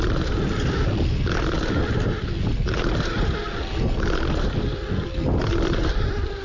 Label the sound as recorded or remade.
recorded